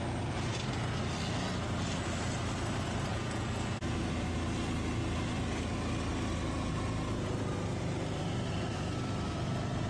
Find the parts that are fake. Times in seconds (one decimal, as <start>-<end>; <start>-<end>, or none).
3.1-3.8